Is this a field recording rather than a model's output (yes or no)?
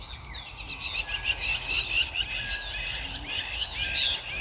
yes